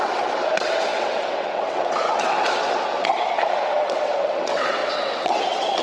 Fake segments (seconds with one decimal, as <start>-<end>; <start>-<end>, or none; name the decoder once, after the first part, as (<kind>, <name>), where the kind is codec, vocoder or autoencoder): 0.0-5.8 (vocoder, WaveNeXt)